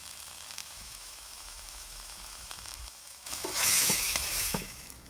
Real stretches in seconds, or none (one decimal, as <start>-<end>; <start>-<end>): none